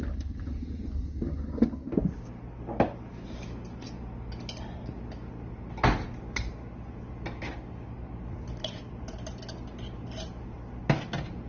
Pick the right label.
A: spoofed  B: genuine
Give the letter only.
B